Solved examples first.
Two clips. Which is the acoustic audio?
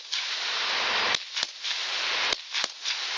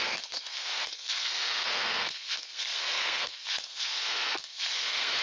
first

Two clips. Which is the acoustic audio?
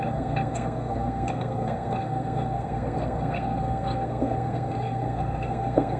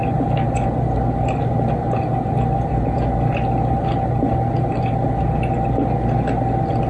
second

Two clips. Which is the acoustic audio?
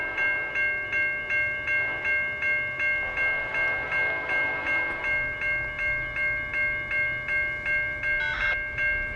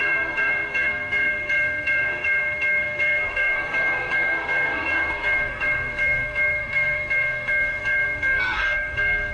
first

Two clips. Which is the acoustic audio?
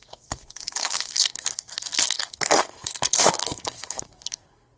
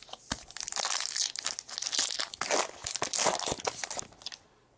second